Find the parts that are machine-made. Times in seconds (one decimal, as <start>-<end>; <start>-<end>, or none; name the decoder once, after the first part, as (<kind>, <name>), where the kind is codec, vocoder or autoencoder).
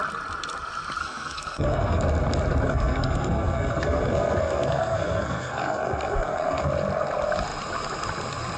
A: 1.0-2.0 (codec, SNAC); 2.7-6.7